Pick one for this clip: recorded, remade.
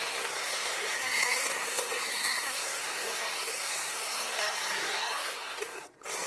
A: remade